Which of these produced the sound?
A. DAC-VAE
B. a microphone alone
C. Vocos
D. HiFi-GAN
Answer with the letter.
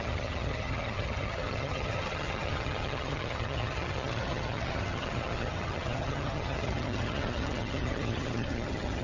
D